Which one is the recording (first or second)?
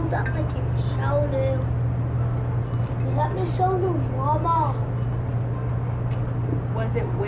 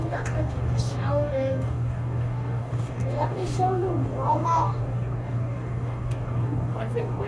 first